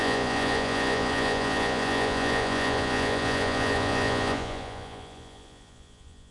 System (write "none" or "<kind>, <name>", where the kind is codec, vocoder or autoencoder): vocoder, Vocos